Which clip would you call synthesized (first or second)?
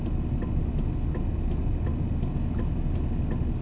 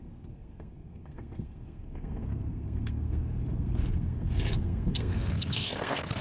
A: second